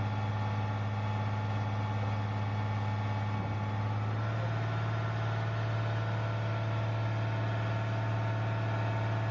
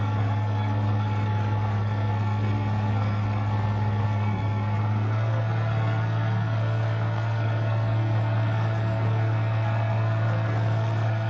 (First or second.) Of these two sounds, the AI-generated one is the second